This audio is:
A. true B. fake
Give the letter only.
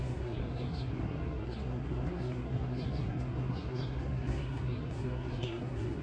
B